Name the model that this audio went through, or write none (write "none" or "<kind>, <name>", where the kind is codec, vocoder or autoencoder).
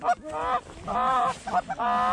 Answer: none